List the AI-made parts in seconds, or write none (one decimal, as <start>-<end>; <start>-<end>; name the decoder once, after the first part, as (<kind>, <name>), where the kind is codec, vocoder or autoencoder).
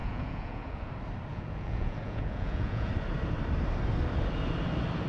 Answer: 0.0-0.9 (vocoder, Vocos); 1.3-2.9